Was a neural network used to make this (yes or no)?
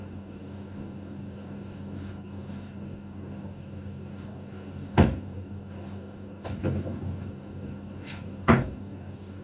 yes